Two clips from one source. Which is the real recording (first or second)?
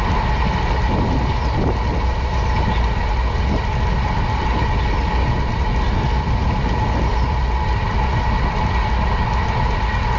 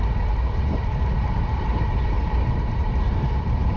first